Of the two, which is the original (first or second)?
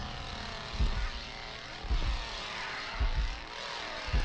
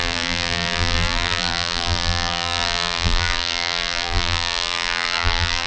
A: first